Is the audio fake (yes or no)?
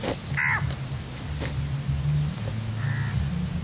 no